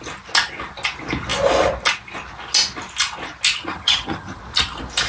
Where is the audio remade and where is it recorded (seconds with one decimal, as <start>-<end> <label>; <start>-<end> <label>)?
0.0-3.6 recorded; 3.6-4.4 remade; 4.4-5.1 recorded